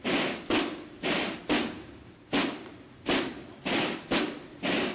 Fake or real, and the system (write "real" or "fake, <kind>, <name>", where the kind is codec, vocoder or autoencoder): real